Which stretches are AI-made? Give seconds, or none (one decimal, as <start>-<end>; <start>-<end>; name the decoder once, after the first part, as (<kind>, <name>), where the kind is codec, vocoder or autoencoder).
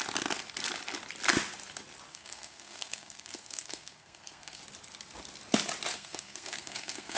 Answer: 2.1-4.6 (codec, SNAC); 5.9-7.2